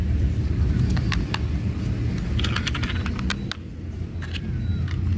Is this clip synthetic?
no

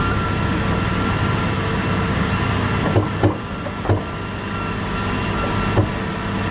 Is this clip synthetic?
no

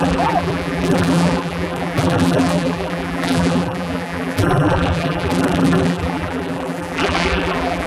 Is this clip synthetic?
yes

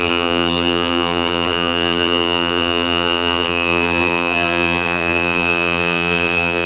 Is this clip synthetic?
yes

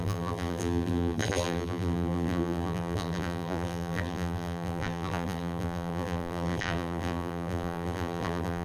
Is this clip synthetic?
yes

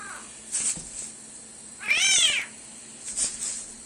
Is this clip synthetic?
no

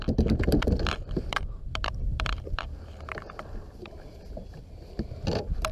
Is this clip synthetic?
yes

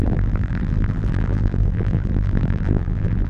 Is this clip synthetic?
yes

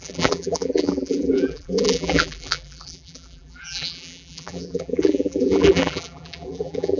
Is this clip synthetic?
yes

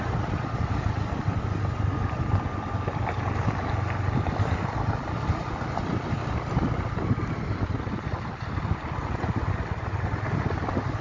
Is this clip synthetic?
no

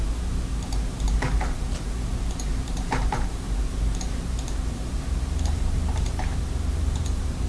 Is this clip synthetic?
yes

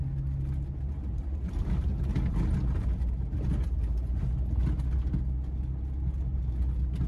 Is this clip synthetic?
no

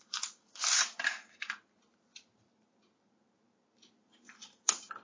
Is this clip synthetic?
no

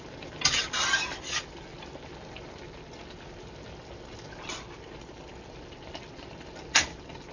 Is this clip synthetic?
no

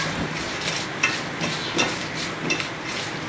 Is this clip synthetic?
no